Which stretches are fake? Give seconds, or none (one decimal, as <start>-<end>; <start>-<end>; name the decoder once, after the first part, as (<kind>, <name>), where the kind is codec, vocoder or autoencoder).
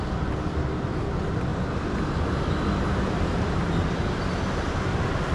none